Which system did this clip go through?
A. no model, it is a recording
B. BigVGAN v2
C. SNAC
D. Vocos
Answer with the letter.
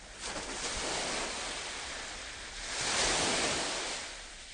A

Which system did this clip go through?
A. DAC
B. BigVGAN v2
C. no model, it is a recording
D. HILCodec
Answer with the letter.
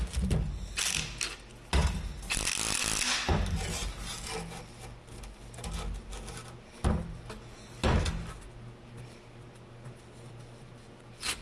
C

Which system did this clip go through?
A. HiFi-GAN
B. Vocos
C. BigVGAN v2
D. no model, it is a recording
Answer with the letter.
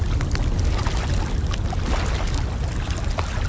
D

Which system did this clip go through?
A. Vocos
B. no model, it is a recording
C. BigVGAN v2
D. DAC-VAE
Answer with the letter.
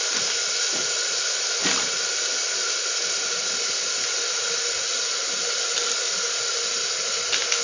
B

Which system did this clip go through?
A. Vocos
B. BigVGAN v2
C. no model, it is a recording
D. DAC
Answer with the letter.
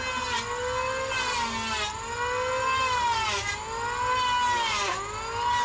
C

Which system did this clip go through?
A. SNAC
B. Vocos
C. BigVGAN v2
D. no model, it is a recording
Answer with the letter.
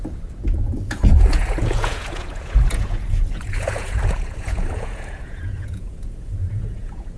B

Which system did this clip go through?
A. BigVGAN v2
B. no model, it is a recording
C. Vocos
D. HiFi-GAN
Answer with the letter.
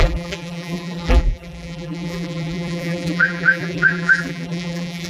A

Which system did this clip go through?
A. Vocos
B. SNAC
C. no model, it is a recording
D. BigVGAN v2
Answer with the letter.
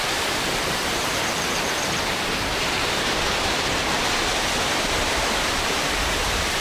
D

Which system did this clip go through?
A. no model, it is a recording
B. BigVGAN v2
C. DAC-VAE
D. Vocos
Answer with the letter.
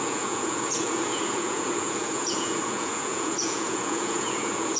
D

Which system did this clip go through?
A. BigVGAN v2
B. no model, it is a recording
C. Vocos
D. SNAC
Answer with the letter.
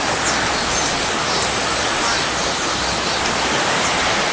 B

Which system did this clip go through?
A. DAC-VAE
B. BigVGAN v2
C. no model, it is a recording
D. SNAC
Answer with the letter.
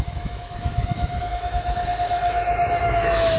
A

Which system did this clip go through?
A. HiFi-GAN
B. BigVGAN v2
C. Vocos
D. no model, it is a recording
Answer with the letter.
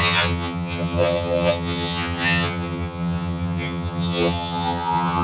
A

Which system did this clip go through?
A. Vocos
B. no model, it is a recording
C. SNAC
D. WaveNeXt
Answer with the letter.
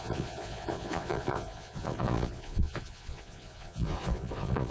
A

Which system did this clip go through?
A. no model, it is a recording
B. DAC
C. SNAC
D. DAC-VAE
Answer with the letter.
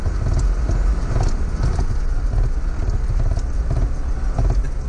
A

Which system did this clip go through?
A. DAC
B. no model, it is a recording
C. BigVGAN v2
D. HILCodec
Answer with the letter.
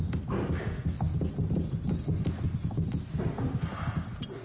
B